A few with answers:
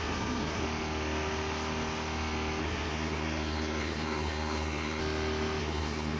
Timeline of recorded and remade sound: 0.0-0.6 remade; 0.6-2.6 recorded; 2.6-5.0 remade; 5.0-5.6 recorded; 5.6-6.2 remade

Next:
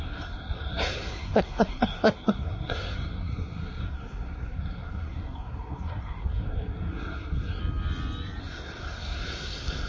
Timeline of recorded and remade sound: 0.0-7.6 remade; 7.6-8.4 recorded; 8.4-9.9 remade

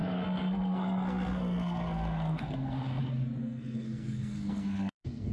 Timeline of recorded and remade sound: 0.0-3.0 remade; 3.0-3.4 recorded; 3.4-5.3 remade

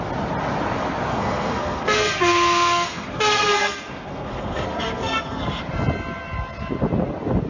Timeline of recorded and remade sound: 0.0-1.1 recorded; 1.1-5.6 remade; 5.6-7.5 recorded

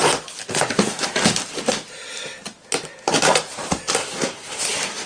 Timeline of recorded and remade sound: 0.0-4.0 recorded; 4.0-4.6 remade; 4.6-5.1 recorded

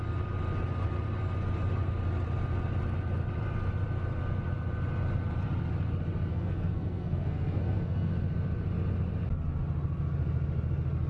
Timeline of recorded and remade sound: 0.0-6.3 recorded; 6.3-8.1 remade; 8.1-11.1 recorded

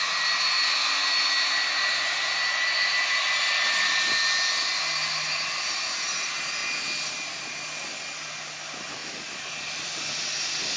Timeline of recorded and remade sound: 0.0-10.8 recorded

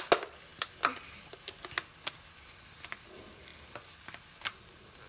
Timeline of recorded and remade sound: 0.0-5.1 recorded